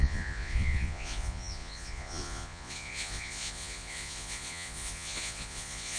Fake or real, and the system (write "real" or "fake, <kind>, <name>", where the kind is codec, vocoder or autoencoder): fake, vocoder, Vocos